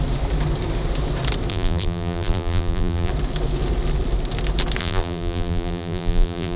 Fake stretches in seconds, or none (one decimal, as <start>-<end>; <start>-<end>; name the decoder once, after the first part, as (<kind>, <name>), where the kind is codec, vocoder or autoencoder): 1.5-3.1 (vocoder, BigVGAN v2); 4.8-6.6